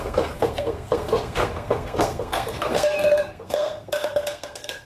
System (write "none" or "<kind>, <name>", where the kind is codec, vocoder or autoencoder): codec, SNAC